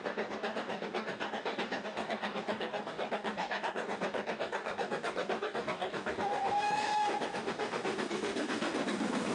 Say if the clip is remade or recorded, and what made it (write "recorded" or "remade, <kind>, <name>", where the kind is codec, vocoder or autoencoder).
remade, codec, DAC